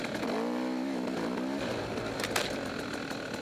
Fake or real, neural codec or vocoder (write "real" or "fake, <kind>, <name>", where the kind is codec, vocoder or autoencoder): real